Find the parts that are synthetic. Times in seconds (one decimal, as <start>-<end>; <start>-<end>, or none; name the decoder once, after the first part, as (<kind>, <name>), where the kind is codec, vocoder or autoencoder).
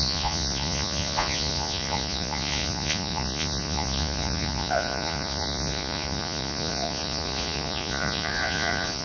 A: 0.0-9.0 (vocoder, Vocos)